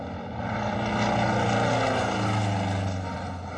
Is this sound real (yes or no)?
yes